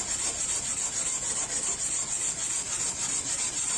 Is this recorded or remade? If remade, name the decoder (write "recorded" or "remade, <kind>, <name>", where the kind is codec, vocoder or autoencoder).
recorded